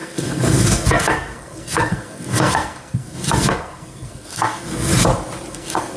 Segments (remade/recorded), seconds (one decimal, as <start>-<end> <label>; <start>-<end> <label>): 0.0-4.9 remade; 4.9-5.5 recorded; 5.5-6.0 remade